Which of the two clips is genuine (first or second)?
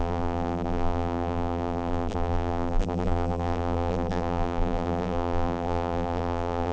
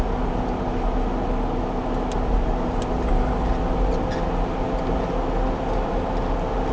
second